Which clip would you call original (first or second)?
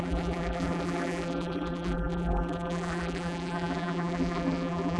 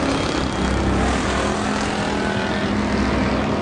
second